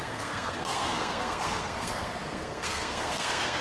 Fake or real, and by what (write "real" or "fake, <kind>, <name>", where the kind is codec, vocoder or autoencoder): fake, codec, SNAC